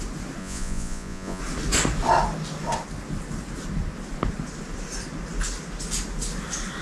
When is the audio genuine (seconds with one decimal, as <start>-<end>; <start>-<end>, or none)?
0.0-0.4; 1.4-6.8